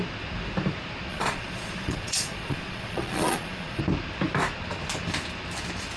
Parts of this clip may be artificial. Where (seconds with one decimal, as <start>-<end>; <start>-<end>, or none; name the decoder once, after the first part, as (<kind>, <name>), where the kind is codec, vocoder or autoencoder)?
1.1-3.8 (vocoder, Vocos)